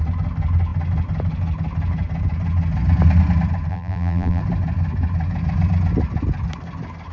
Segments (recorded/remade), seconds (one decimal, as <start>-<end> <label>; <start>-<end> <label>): 0.0-3.7 recorded; 3.7-4.4 remade; 4.4-7.1 recorded